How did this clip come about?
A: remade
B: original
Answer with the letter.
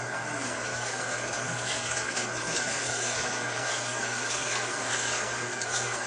A